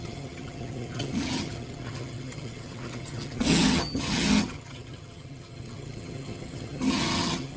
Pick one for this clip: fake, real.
fake